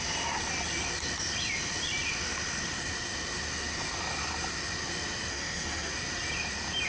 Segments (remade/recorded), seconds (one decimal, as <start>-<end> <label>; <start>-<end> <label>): 0.0-5.3 recorded; 5.3-5.9 remade; 5.9-6.9 recorded